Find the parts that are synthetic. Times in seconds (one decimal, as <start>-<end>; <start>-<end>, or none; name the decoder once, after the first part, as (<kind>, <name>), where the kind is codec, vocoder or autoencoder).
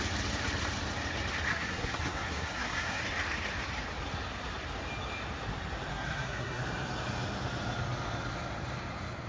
1.5-3.0 (codec, SNAC); 5.9-6.6